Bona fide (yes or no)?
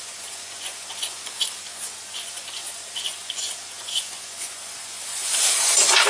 no